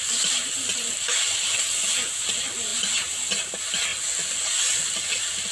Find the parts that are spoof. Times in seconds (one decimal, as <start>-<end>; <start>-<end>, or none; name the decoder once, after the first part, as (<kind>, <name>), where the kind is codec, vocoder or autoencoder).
none